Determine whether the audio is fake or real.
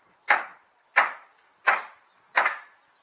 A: real